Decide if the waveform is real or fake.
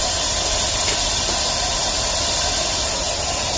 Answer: real